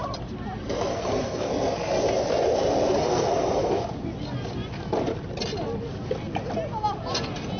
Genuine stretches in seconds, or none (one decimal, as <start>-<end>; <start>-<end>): 0.0-0.9; 1.5-3.0; 3.8-7.6